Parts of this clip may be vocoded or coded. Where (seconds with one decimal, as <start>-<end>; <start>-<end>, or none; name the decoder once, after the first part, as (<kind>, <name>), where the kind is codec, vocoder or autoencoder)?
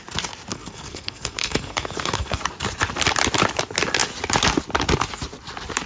0.5-2.4 (codec, SNAC)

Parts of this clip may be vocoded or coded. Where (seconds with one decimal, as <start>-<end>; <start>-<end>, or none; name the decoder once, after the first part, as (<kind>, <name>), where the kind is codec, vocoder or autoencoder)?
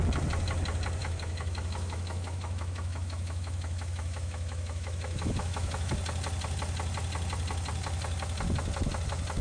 1.0-5.9 (autoencoder, DAC-VAE)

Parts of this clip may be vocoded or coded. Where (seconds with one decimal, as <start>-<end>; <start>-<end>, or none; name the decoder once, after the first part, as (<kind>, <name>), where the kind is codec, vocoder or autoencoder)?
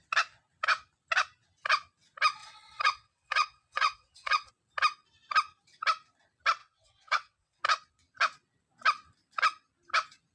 2.4-4.5 (vocoder, WaveNeXt); 6.6-7.6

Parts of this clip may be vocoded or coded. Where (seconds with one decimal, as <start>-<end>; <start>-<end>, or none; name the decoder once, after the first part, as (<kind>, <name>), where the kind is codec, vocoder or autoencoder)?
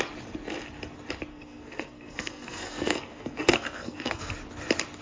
1.3-4.3 (codec, SNAC)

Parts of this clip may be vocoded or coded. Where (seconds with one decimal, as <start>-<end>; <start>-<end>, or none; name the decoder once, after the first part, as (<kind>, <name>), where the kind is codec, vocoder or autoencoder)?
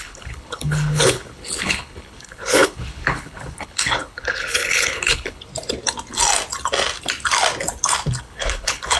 0.0-5.5 (codec, HILCodec); 8.2-9.0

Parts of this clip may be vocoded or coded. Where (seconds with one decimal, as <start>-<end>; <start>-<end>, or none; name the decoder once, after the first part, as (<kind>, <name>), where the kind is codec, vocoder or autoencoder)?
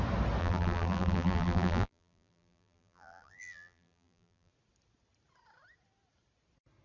0.4-4.5 (vocoder, BigVGAN v2)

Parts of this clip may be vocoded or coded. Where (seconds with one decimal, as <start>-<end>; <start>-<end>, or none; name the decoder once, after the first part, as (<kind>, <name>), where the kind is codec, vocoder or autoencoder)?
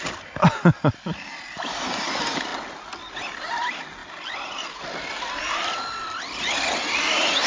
none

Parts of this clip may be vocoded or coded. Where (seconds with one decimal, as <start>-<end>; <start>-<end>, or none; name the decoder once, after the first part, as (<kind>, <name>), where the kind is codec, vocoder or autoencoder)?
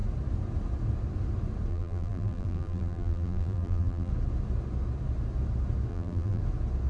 1.7-4.1 (vocoder, BigVGAN v2); 5.9-6.4